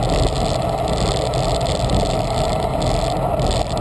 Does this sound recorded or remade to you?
recorded